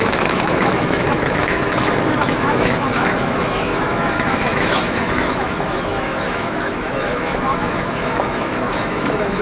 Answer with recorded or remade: remade